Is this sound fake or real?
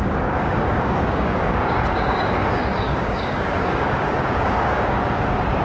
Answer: fake